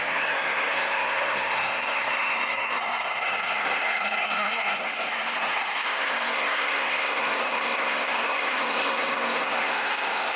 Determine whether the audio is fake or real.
fake